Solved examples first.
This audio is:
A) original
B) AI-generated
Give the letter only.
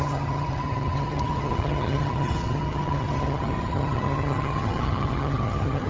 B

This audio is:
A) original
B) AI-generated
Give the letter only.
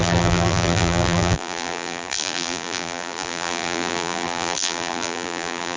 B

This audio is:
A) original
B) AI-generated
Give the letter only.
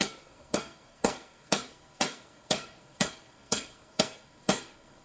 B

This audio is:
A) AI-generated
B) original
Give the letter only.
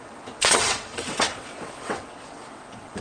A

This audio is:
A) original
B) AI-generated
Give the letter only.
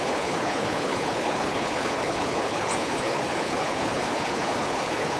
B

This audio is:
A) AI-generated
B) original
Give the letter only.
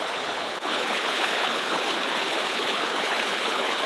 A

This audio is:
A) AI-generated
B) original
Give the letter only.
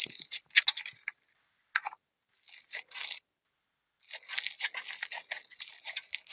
B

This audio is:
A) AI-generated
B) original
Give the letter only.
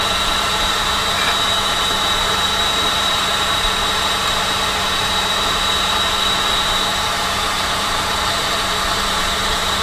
A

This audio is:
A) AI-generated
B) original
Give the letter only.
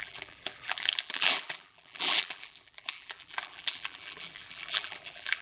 A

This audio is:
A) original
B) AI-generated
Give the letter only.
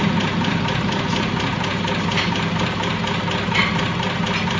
A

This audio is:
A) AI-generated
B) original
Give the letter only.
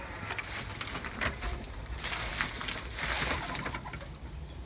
B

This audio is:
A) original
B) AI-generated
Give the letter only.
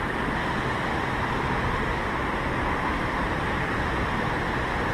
A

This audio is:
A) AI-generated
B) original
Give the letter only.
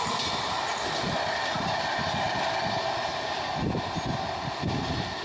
B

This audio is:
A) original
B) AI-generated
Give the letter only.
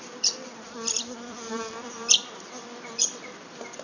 B